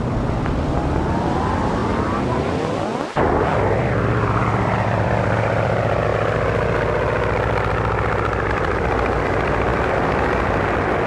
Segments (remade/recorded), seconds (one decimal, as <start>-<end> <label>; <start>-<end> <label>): 0.0-1.8 remade; 1.8-2.5 recorded; 2.5-2.9 remade; 2.9-4.4 recorded; 4.4-6.1 remade; 6.1-8.5 recorded; 8.5-11.1 remade